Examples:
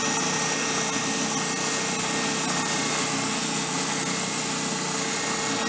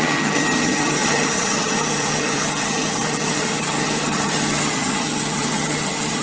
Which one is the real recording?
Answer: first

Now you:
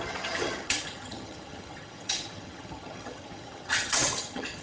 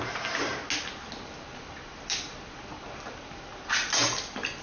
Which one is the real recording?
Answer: second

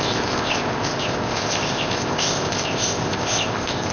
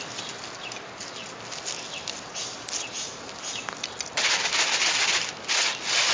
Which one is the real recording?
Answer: second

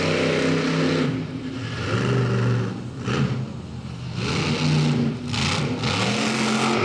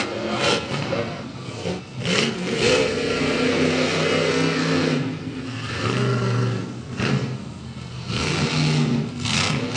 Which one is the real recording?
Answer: first